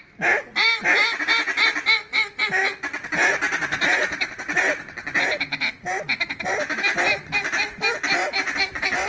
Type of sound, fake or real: real